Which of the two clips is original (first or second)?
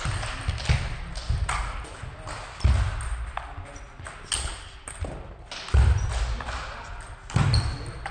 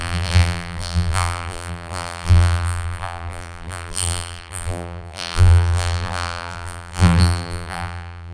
first